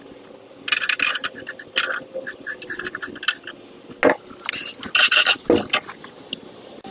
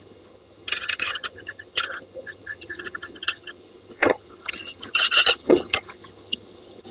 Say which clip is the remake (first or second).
second